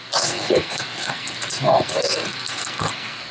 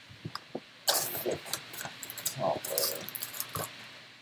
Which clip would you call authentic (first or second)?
second